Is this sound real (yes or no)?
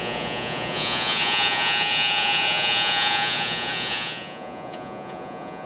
no